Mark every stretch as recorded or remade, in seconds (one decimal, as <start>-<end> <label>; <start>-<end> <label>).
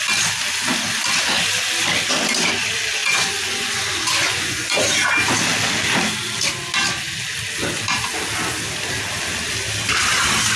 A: 0.0-3.0 recorded; 3.0-4.8 remade; 4.8-10.6 recorded